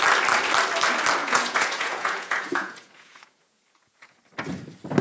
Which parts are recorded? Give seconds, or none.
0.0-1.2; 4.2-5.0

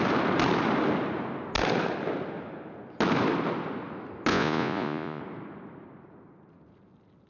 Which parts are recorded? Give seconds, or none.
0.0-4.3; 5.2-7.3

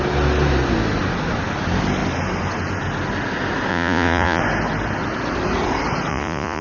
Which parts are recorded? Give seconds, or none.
0.0-3.7; 4.4-6.1

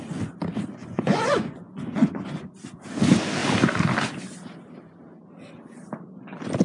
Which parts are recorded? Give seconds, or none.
0.0-0.8; 2.5-6.6

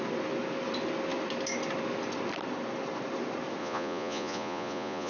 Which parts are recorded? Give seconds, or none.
0.0-3.6